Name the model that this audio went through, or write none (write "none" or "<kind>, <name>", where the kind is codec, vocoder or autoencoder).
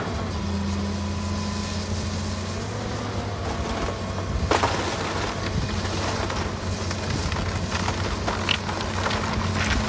none